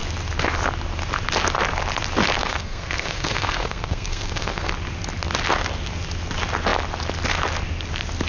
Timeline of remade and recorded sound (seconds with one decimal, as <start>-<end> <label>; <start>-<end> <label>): 0.0-2.4 recorded; 2.4-4.7 remade; 4.7-8.3 recorded